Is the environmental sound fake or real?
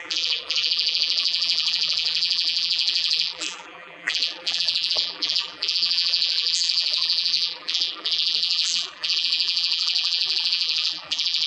fake